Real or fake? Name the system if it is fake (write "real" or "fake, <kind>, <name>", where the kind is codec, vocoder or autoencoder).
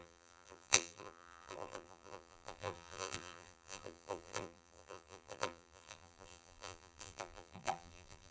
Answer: fake, vocoder, BigVGAN v2